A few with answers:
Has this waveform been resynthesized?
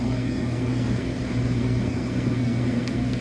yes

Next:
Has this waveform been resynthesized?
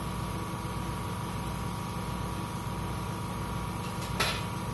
no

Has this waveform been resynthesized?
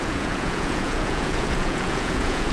yes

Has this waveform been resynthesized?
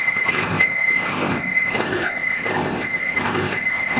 yes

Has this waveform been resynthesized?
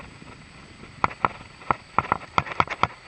yes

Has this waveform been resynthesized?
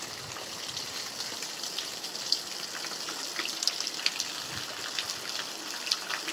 no